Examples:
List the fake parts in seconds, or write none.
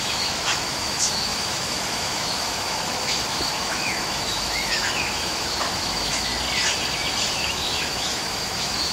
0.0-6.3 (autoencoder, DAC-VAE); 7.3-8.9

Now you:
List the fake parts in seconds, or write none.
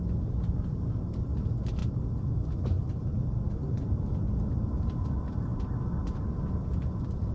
none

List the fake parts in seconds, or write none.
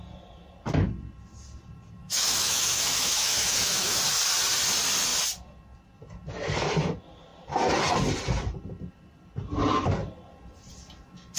2.0-4.0 (autoencoder, DAC-VAE)